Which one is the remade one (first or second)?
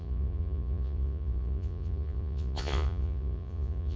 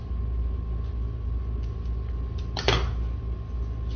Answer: first